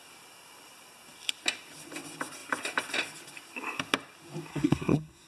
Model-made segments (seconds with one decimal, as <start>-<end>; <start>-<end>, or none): 4.5-5.3